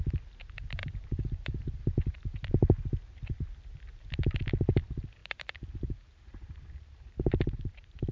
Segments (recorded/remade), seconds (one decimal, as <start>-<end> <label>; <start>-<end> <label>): 0.0-0.8 recorded; 0.8-2.5 remade; 2.5-5.2 recorded; 5.2-8.1 remade